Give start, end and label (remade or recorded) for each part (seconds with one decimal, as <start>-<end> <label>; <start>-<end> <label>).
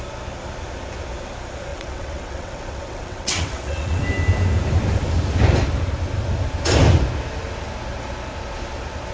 0.0-1.7 recorded; 1.7-4.0 remade; 4.0-9.1 recorded